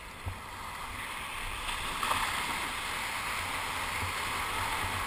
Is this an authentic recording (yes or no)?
yes